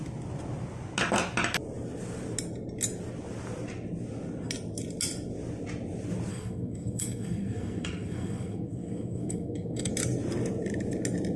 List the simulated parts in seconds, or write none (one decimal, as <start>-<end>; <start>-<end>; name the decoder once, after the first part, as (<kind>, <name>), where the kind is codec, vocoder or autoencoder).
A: 6.3-9.9 (codec, SNAC)